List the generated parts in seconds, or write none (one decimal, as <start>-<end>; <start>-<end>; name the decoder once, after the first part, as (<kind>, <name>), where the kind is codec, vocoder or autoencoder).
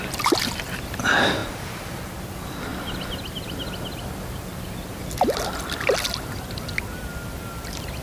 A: none